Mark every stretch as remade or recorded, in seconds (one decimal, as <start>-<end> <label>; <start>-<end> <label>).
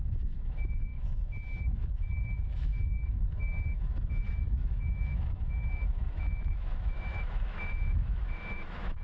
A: 0.0-9.0 remade